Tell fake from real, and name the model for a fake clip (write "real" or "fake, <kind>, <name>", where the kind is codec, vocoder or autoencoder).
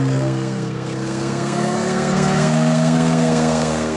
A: fake, codec, SNAC